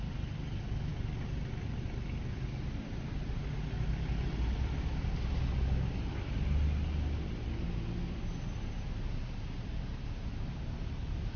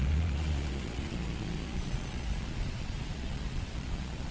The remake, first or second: second